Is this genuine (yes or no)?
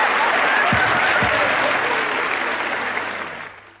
yes